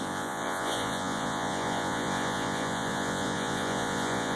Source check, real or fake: fake